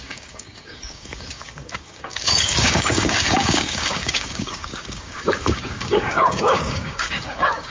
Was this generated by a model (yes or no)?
yes